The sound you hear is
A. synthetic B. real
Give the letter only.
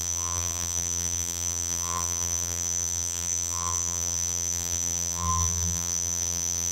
A